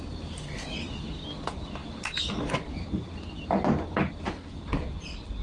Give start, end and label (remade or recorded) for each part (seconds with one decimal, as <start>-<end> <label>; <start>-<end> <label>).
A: 0.0-5.4 recorded

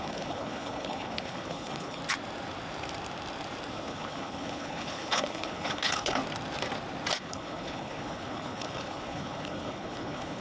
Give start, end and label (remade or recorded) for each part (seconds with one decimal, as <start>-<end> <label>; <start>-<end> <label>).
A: 0.0-2.0 remade; 2.0-3.7 recorded; 3.7-6.2 remade; 6.2-7.2 recorded; 7.2-10.4 remade

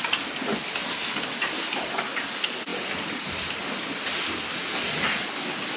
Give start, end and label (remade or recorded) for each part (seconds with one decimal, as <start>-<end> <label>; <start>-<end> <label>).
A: 0.0-2.7 remade; 2.7-3.2 recorded; 3.2-5.8 remade